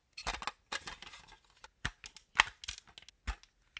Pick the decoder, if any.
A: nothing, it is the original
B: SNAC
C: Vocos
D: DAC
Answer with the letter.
A